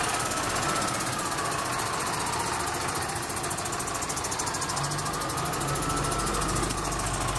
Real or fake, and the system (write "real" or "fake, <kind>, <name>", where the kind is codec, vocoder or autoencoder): real